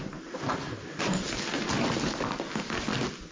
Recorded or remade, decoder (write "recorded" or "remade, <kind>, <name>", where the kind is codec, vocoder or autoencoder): recorded